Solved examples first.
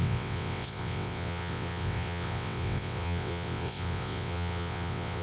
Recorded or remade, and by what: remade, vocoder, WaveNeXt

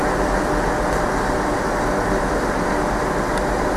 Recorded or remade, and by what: recorded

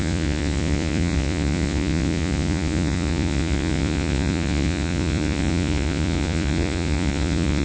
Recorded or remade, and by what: remade, vocoder, Vocos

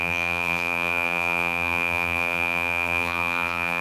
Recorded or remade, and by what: remade, vocoder, BigVGAN v2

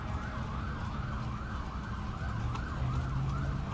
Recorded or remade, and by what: recorded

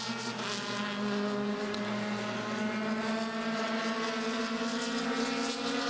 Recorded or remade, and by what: recorded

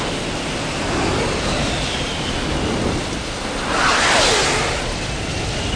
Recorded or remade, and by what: recorded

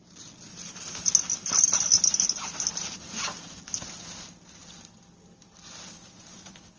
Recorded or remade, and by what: recorded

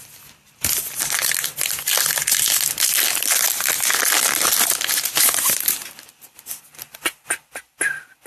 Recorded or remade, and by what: recorded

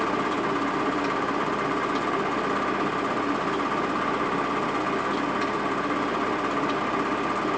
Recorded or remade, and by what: recorded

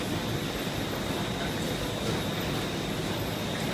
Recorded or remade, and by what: recorded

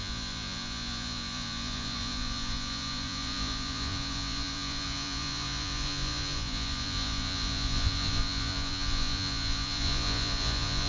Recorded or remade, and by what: remade, vocoder, Vocos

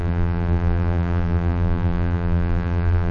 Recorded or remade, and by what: remade, vocoder, BigVGAN v2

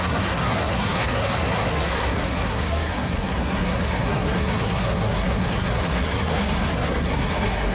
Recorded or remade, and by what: remade, codec, SNAC